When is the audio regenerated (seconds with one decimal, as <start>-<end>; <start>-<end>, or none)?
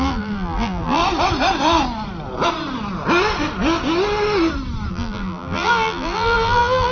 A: 0.0-1.0; 4.9-6.9